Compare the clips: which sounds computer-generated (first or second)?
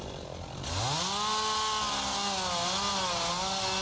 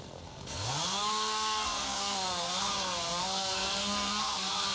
second